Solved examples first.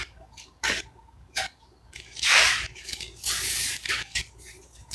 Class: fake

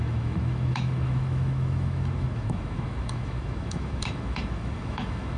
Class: fake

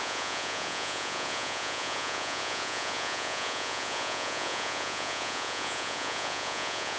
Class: fake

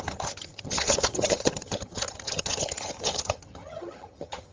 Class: fake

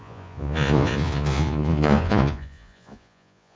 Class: fake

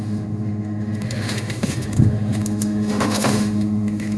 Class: fake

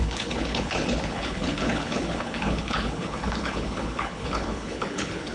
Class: fake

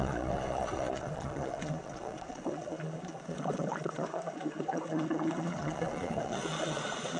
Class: fake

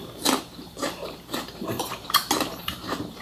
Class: fake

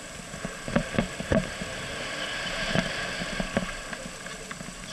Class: real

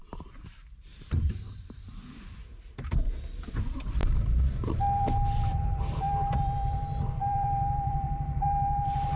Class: fake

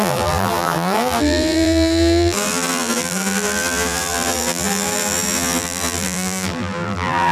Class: fake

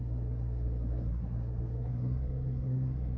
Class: fake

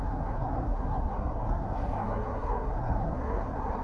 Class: fake